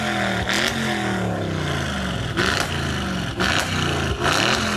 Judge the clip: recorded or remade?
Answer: recorded